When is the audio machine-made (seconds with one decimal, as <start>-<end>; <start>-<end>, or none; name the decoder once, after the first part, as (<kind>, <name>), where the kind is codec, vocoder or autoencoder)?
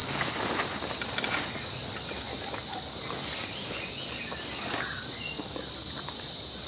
3.6-4.2 (vocoder, Vocos)